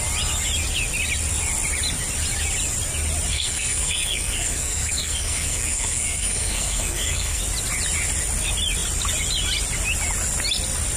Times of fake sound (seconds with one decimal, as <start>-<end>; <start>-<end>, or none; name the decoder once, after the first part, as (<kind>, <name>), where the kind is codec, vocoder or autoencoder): 3.3-7.4 (codec, SNAC)